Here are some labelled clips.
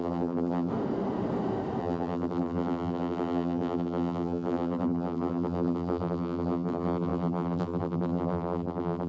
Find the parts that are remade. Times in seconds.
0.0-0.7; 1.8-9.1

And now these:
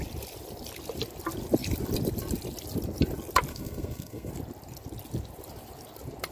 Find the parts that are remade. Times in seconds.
3.5-4.3

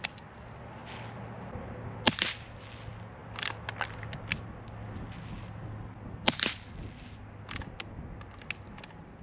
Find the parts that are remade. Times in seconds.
none